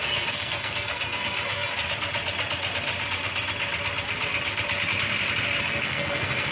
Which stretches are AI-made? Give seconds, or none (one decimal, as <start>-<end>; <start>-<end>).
0.0-1.7; 5.6-6.5